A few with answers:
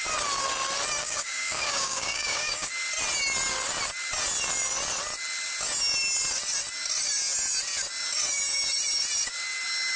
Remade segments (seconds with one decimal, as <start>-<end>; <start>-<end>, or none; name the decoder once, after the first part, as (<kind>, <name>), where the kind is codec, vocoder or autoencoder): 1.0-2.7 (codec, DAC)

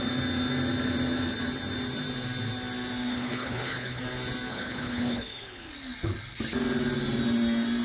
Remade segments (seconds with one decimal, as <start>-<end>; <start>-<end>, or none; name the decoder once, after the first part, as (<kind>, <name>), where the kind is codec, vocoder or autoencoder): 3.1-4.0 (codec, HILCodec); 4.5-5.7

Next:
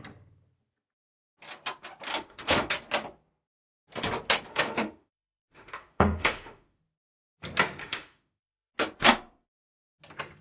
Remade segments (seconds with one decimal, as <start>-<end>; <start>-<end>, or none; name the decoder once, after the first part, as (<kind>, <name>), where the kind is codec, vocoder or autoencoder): 2.1-2.7 (autoencoder, DAC-VAE); 4.5-6.8; 7.8-8.7